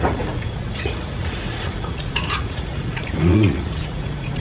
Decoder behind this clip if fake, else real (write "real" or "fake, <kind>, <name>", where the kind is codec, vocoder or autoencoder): fake, vocoder, Vocos